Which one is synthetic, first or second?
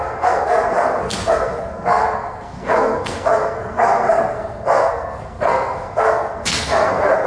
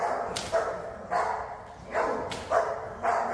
first